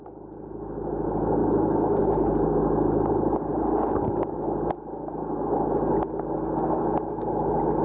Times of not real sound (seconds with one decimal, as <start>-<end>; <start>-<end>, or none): none

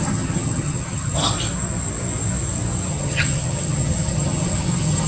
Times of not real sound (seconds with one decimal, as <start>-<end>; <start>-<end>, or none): 0.0-1.2; 2.9-5.1

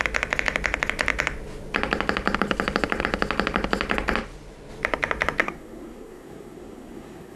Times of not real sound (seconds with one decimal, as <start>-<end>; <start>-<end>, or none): 5.4-7.4